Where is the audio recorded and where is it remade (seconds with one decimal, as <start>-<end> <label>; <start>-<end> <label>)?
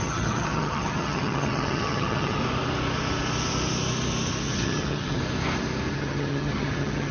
0.0-2.4 remade; 2.4-4.4 recorded; 4.4-5.2 remade; 5.2-5.9 recorded; 5.9-7.1 remade